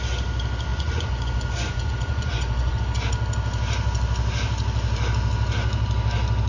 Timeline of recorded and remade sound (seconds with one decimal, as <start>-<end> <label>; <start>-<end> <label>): 0.0-0.7 recorded; 0.7-2.8 remade; 2.8-6.5 recorded